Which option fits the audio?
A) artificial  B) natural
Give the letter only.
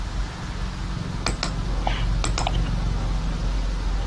B